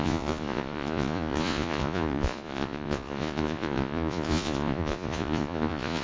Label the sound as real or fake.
fake